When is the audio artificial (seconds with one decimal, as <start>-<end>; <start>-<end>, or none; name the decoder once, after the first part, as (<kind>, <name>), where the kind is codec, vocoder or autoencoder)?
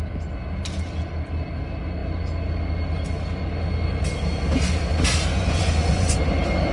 5.3-6.2 (vocoder, Vocos)